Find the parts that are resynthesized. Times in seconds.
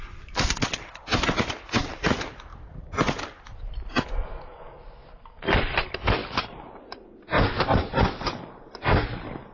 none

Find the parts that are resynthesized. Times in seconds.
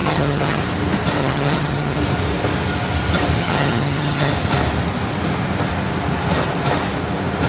0.0-0.6; 1.2-2.0; 3.4-4.3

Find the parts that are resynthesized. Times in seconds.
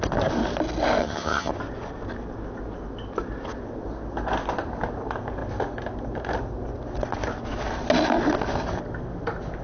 1.0-1.5